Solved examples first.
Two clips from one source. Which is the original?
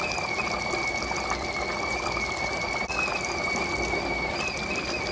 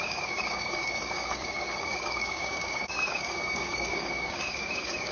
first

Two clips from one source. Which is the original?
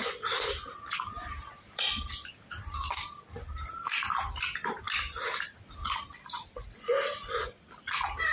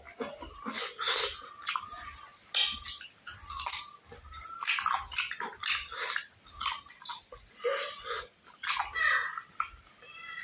second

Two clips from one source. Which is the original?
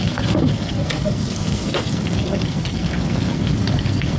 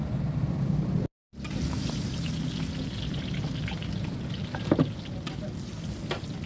second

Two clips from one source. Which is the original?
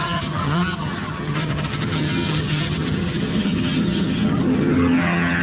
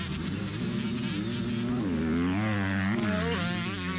second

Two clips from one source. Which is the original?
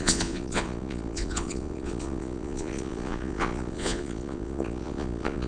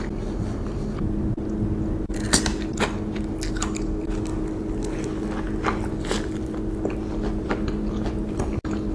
second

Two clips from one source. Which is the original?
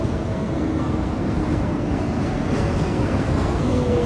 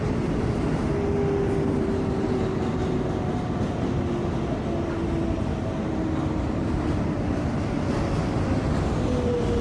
second